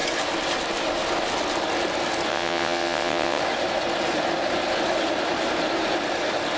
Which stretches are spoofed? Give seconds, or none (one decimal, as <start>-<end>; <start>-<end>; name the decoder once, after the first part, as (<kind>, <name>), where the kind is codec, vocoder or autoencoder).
2.3-3.4 (vocoder, WaveNeXt)